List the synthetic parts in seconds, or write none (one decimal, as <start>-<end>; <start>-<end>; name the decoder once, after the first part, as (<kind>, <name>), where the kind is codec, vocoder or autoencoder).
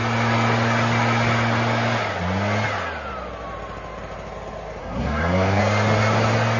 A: 4.8-5.6 (codec, SNAC)